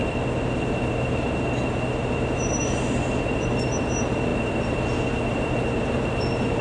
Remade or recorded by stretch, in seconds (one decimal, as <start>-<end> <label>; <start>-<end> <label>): 0.0-4.3 recorded; 4.3-5.0 remade; 5.0-6.6 recorded